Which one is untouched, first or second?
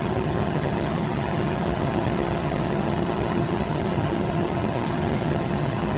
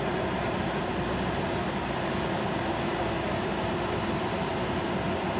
second